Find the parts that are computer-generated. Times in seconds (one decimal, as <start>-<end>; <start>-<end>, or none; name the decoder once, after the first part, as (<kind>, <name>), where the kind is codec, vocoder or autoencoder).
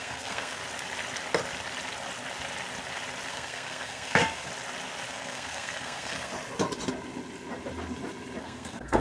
0.0-0.6 (codec, SNAC); 3.3-4.5; 5.1-6.3; 8.4-9.0